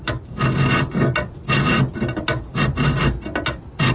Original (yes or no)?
yes